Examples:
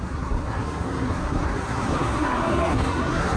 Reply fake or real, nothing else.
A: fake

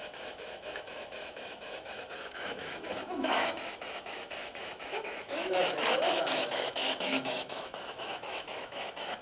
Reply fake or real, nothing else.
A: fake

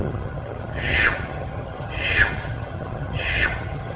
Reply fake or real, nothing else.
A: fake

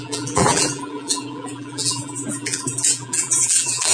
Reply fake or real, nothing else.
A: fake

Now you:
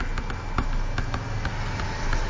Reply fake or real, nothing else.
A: real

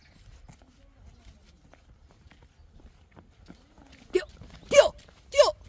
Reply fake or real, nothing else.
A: real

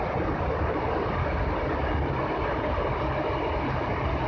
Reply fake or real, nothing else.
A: real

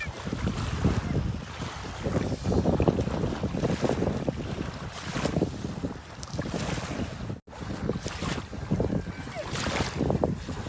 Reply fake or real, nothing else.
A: real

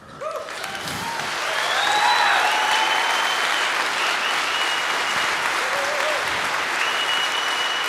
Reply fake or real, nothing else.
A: real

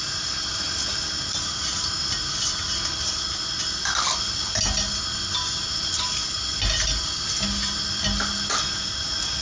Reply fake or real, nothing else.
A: real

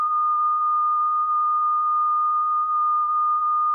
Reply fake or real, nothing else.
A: fake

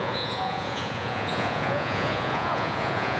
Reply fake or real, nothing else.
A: fake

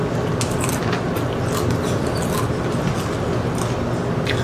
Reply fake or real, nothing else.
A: real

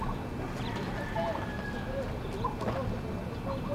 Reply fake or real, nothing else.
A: real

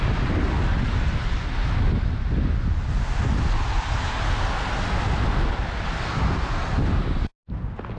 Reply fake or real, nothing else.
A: real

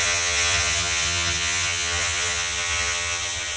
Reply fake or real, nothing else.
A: fake